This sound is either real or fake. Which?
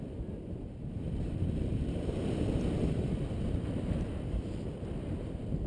fake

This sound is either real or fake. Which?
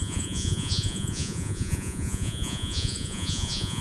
fake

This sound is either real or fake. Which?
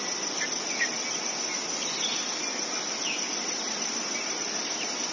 real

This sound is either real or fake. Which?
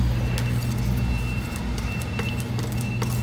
real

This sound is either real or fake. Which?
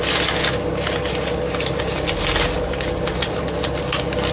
real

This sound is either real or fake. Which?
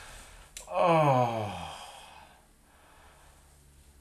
real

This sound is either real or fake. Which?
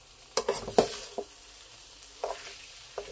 real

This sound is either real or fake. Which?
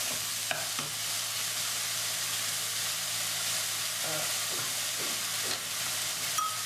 real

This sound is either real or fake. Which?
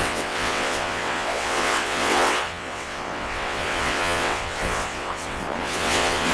fake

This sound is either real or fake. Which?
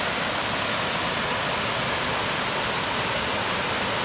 real